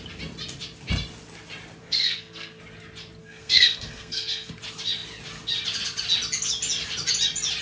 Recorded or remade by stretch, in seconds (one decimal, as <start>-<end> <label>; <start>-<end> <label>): 0.0-1.8 recorded; 1.8-2.6 remade; 2.6-3.2 recorded; 3.2-4.5 remade; 4.5-7.6 recorded